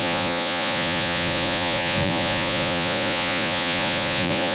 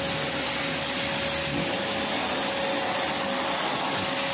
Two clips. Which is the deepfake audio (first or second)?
first